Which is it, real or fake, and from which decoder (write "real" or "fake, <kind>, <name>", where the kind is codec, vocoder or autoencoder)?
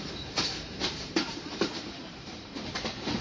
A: fake, vocoder, BigVGAN v2